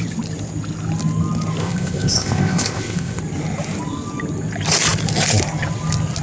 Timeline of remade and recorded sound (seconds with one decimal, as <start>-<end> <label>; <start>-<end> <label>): 0.0-1.6 recorded; 1.6-3.2 remade; 3.2-6.2 recorded